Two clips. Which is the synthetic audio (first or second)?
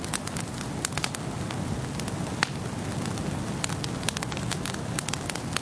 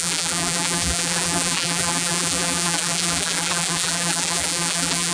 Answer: second